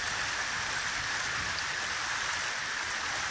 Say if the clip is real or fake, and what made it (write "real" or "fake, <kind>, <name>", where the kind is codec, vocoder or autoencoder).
real